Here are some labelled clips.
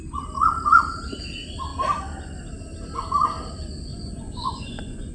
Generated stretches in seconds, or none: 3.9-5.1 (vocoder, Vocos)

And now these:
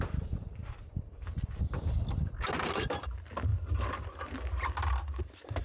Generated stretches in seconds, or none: none

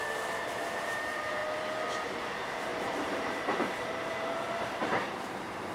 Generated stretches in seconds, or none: 0.0-5.7 (vocoder, BigVGAN v2)